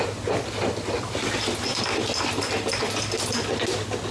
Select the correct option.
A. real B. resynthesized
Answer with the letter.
A